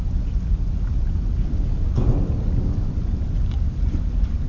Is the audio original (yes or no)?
yes